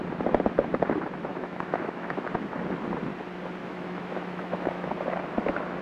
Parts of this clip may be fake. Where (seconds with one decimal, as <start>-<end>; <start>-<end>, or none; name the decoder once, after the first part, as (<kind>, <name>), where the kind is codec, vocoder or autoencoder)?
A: 1.3-2.2 (autoencoder, DAC-VAE); 3.6-4.9